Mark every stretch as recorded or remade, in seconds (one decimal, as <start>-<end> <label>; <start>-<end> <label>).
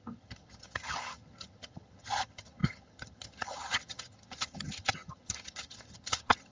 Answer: 0.0-6.5 remade